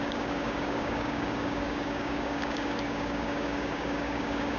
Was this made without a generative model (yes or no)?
no